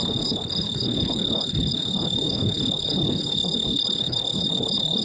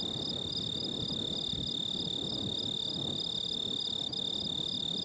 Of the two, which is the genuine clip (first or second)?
second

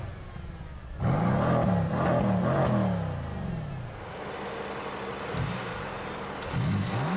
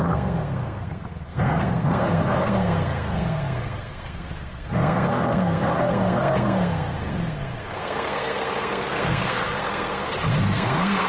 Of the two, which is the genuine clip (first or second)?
first